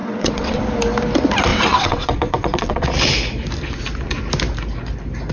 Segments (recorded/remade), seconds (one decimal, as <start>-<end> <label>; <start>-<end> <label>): 0.0-0.6 remade; 0.6-1.5 recorded; 1.5-2.9 remade; 2.9-5.3 recorded